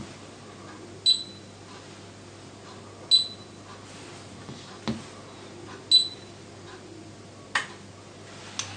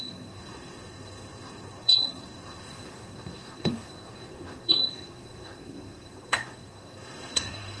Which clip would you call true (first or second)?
first